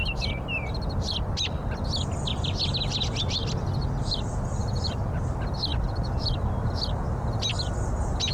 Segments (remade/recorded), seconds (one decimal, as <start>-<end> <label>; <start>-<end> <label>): 0.0-1.6 remade; 1.6-5.7 recorded; 5.7-6.7 remade; 6.7-8.3 recorded